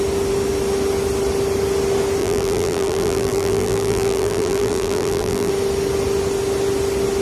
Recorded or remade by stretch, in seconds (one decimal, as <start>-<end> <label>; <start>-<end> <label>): 0.0-2.2 recorded; 2.2-5.5 remade; 5.5-7.2 recorded